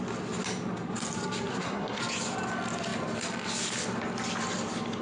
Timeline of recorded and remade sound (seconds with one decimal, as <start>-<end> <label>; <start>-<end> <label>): 0.0-1.5 recorded; 1.5-2.0 remade; 2.0-5.0 recorded